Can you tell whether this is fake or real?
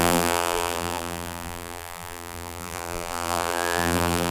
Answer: fake